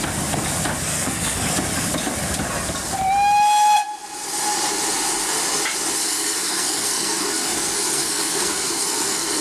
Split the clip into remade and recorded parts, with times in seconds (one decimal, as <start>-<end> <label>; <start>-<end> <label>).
0.0-0.9 recorded; 0.9-1.5 remade; 1.5-6.0 recorded; 6.0-9.4 remade